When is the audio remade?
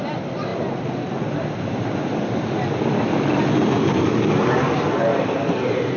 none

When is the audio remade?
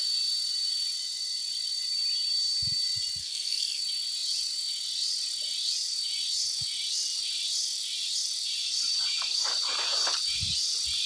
3.2-3.8 (codec, SNAC)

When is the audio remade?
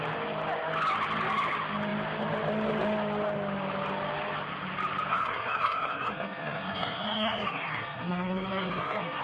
5.1-9.2 (codec, SNAC)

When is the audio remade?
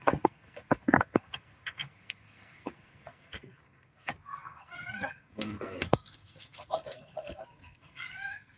0.0-8.6 (codec, SNAC)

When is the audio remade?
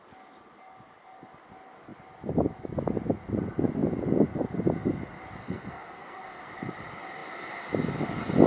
5.4-6.5 (codec, SNAC)